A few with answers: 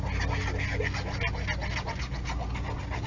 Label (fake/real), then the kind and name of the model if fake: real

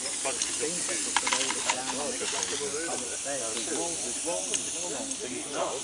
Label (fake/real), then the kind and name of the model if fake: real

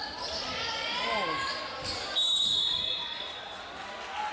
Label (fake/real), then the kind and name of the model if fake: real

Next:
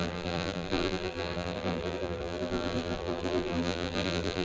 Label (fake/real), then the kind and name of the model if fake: fake, vocoder, BigVGAN v2